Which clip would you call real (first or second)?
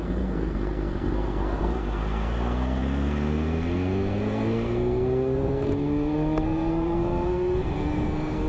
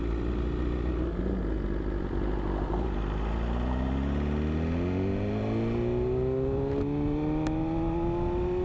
second